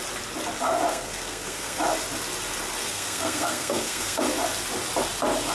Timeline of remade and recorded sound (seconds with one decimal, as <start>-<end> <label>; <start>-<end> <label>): 0.0-0.9 recorded; 0.9-1.8 remade; 1.8-2.8 recorded; 2.8-4.2 remade; 4.2-5.5 recorded